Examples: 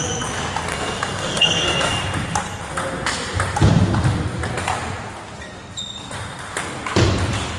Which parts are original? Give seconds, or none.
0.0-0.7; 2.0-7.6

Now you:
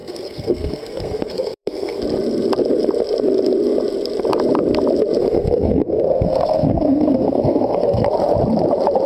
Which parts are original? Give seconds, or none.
2.0-5.2; 8.1-9.1

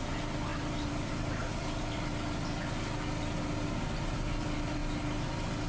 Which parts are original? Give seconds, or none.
0.0-0.5; 1.1-1.5; 2.1-5.7

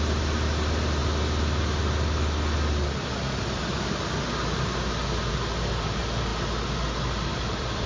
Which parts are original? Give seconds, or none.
0.0-7.3

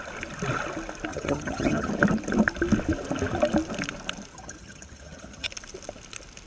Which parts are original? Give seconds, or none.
0.0-1.1; 1.9-4.3; 5.5-6.5

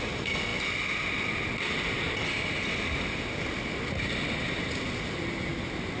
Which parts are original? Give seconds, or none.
0.0-6.0

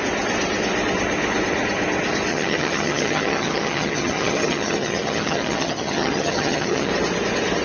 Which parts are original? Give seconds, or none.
0.0-2.3; 6.9-7.6